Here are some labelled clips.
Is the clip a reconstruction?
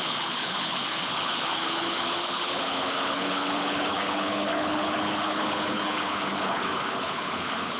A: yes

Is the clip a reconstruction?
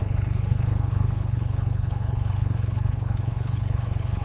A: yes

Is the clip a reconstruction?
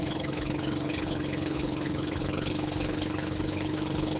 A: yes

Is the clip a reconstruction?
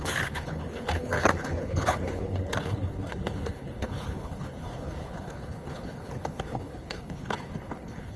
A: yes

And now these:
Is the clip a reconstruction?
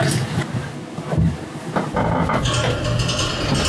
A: no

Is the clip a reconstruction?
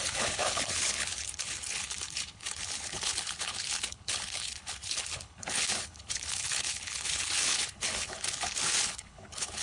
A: yes